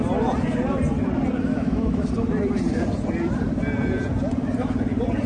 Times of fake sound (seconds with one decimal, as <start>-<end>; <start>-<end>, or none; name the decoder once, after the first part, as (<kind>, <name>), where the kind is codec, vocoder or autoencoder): 1.5-2.1 (autoencoder, DAC-VAE)